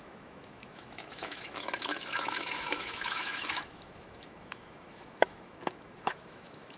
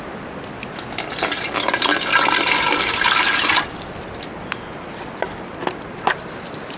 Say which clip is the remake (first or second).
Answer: first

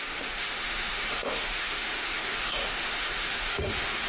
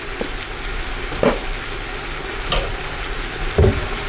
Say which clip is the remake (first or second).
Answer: first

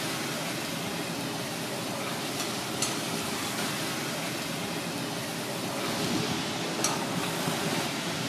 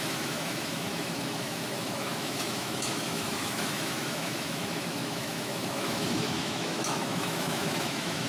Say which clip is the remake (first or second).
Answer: second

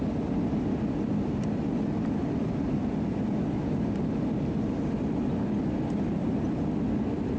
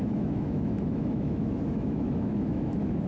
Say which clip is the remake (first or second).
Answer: second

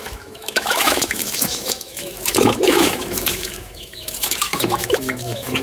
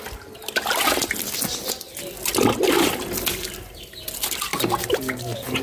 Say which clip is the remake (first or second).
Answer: first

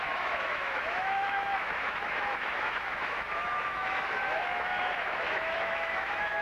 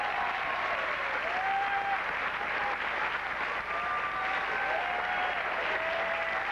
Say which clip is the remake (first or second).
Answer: first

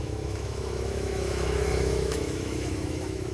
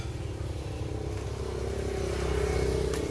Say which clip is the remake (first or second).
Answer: first